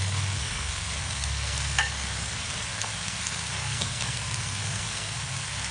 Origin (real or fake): fake